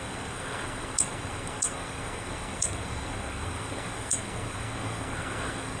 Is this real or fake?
fake